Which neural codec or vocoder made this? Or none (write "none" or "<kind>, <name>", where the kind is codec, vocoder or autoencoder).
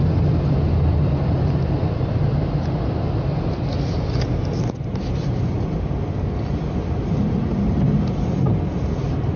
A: none